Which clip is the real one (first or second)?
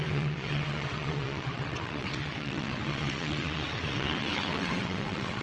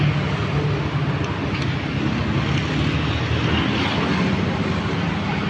second